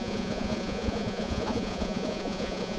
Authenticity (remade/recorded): remade